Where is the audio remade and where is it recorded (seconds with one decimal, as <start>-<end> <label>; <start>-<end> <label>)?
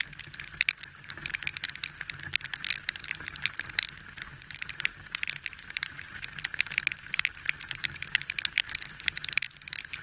0.0-1.5 remade; 1.5-2.9 recorded; 2.9-10.0 remade